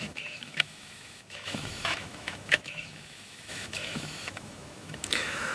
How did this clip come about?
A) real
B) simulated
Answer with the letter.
B